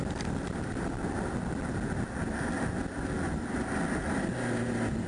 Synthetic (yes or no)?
no